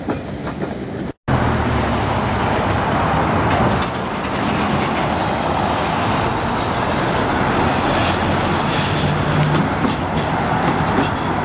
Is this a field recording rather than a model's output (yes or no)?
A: yes